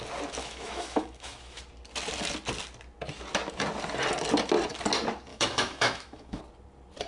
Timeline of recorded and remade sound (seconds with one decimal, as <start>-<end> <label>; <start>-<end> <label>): 0.0-0.4 recorded; 0.4-1.6 remade; 1.6-5.3 recorded; 5.3-6.4 remade; 6.4-7.1 recorded